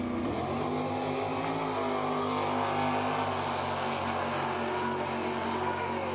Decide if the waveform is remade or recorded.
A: recorded